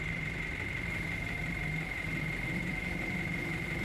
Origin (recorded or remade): remade